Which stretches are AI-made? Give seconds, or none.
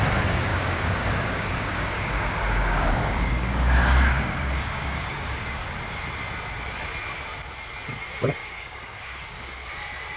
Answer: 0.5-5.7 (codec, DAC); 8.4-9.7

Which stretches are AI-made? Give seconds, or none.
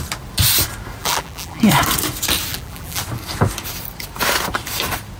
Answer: 1.0-1.6 (vocoder, BigVGAN v2); 2.5-3.0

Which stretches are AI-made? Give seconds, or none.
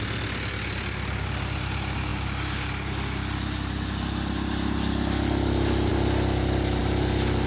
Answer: none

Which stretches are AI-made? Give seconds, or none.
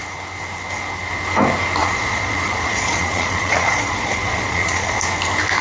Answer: 1.8-5.0 (vocoder, Vocos)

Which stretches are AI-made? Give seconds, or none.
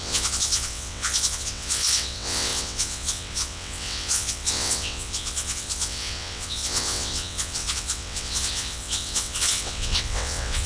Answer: 0.0-10.7 (vocoder, WaveNeXt)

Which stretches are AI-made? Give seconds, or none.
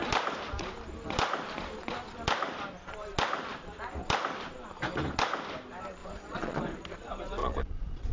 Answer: 6.0-6.6 (vocoder, Vocos); 7.4-8.1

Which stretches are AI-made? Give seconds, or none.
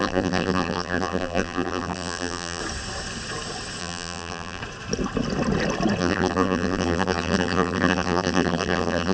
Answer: 0.0-2.6 (vocoder, BigVGAN v2); 3.8-4.6; 6.0-9.1